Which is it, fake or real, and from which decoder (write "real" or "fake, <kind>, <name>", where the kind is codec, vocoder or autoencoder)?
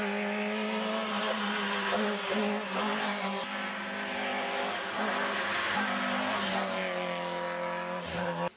real